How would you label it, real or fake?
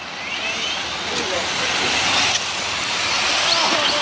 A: real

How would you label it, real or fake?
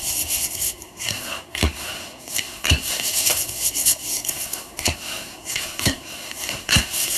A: fake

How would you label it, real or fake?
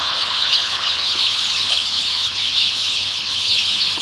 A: fake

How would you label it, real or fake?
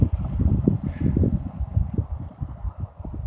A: fake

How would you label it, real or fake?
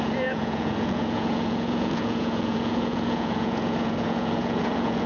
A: fake